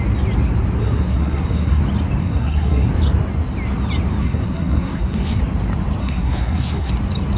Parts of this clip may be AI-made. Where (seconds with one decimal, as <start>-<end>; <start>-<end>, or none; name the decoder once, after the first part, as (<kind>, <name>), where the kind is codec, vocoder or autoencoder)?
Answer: 0.8-1.8 (codec, SNAC); 2.2-2.9; 4.2-5.4; 6.0-6.9